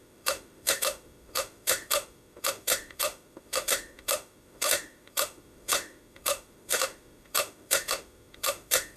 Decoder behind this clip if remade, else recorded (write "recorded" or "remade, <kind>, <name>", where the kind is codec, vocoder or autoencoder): remade, autoencoder, DAC-VAE